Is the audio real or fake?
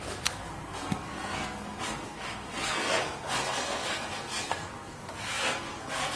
fake